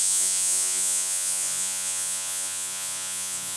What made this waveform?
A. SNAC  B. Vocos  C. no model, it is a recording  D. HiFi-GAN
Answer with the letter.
B